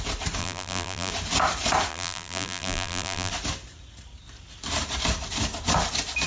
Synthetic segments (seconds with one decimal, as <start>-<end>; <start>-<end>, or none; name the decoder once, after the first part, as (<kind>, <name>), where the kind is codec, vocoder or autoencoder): 0.4-1.1 (vocoder, BigVGAN v2); 1.9-3.3